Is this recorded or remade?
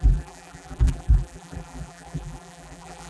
remade